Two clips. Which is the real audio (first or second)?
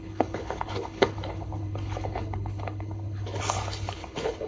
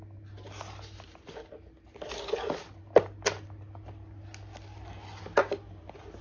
second